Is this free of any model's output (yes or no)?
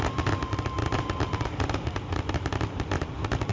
yes